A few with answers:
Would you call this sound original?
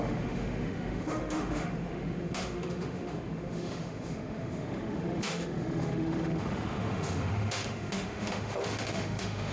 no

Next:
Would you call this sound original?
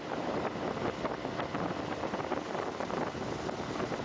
yes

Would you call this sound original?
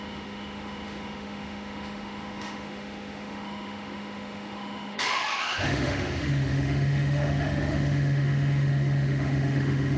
no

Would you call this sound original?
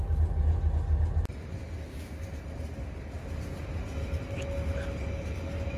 yes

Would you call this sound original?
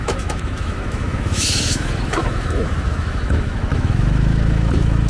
no